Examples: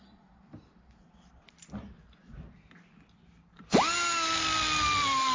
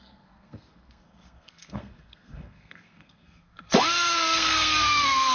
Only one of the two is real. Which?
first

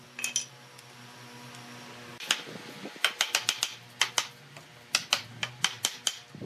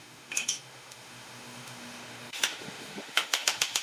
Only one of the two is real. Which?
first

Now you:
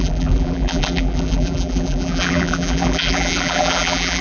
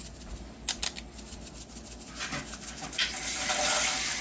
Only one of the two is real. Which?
second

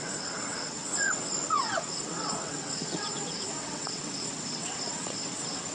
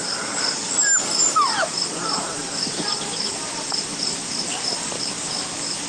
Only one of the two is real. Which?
second